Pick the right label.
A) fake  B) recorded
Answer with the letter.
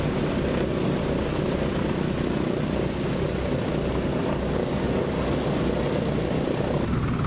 B